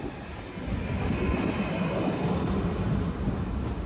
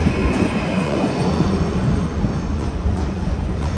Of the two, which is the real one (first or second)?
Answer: first